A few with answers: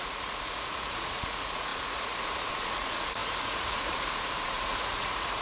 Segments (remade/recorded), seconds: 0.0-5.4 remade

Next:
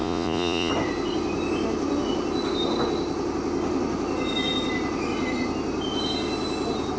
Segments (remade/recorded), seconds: 0.0-0.7 remade; 0.7-7.0 recorded

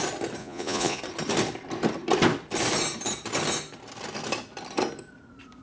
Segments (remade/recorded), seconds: 0.0-0.4 recorded; 0.4-1.0 remade; 1.0-5.6 recorded

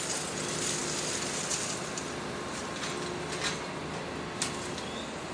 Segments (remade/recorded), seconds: 0.0-5.3 recorded

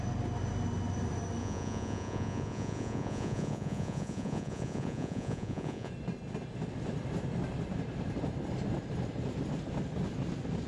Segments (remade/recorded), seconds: 0.0-1.4 recorded; 1.4-5.9 remade; 5.9-10.7 recorded

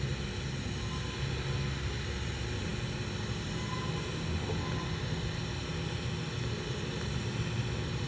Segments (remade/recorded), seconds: 0.0-8.1 recorded